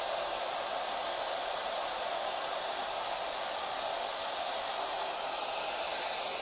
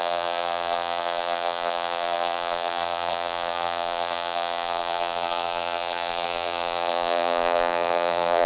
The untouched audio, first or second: first